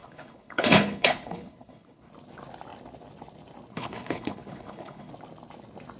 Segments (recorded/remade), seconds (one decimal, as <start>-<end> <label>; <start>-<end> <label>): 0.0-2.1 remade; 2.1-3.7 recorded; 3.7-5.1 remade; 5.1-6.0 recorded